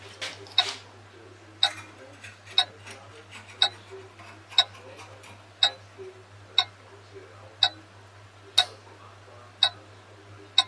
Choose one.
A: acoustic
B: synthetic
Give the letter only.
A